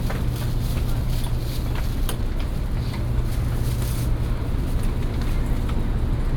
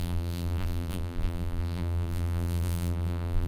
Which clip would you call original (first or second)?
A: first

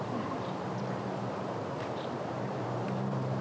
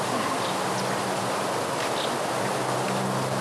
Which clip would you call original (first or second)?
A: second